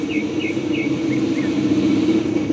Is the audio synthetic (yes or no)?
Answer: no